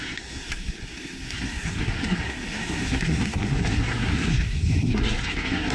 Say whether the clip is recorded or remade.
remade